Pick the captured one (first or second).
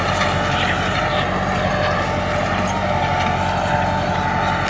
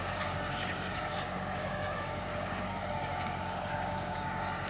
first